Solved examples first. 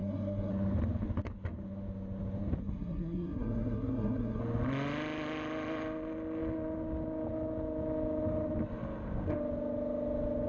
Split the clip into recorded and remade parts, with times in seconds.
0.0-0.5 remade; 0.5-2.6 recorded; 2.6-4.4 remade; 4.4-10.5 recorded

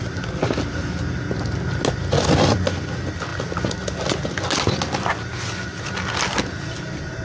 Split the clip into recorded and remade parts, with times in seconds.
0.0-7.2 recorded